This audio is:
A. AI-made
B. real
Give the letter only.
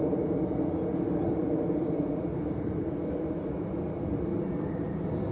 B